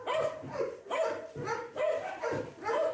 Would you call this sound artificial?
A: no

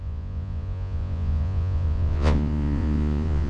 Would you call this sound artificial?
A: yes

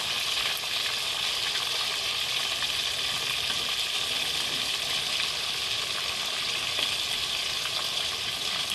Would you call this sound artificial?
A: no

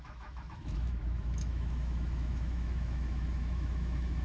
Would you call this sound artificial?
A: yes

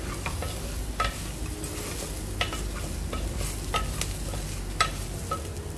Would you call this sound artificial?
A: no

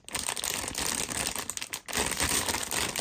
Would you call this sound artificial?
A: no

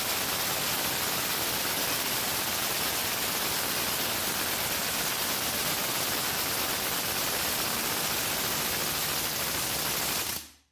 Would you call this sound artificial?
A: no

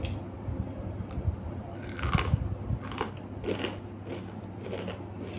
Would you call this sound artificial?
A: no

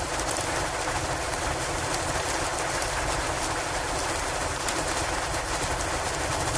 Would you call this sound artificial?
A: no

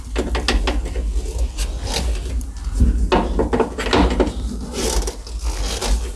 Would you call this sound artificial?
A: no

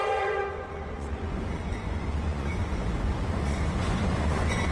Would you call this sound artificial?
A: yes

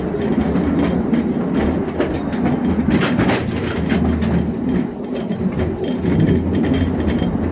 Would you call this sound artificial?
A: no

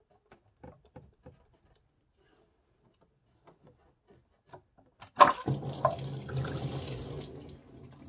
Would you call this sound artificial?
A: no